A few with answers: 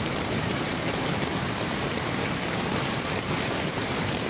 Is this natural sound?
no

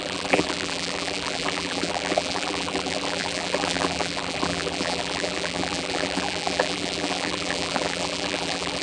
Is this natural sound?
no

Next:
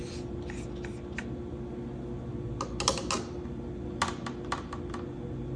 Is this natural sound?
yes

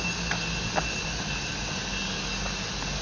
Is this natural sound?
yes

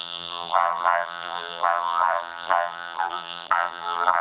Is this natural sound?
no